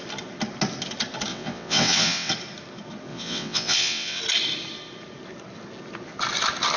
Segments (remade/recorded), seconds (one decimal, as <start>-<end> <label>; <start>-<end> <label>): 0.0-1.3 recorded; 1.3-2.3 remade; 2.3-3.1 recorded; 3.1-4.2 remade; 4.2-6.8 recorded